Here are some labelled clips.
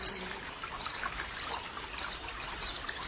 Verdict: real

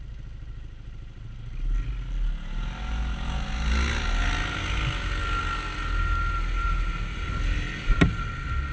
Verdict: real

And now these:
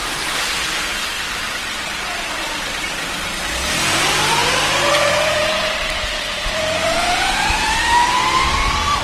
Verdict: fake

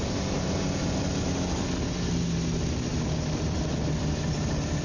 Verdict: real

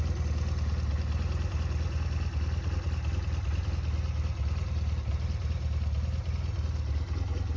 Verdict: real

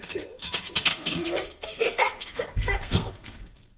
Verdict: fake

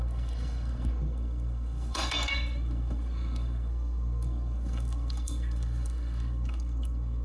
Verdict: fake